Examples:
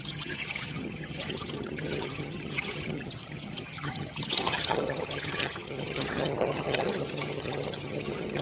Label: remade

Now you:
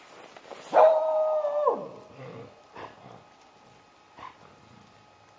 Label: recorded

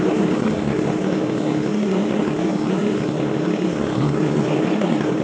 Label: remade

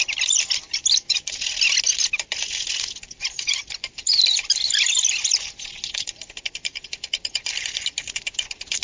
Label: recorded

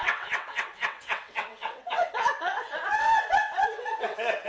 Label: remade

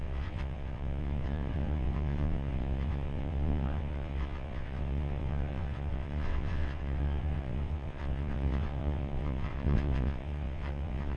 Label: remade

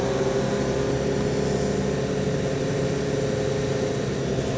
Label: recorded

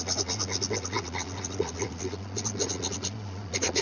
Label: remade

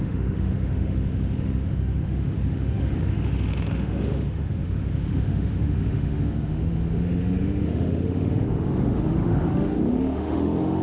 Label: remade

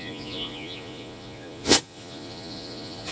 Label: remade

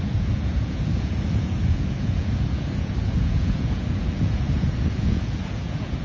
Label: remade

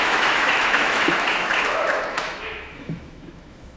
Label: remade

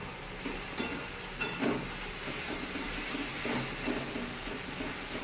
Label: recorded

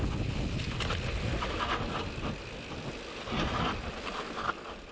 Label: recorded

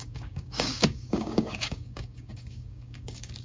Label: remade